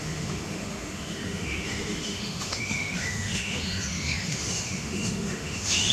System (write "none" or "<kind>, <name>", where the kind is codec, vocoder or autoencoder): autoencoder, DAC-VAE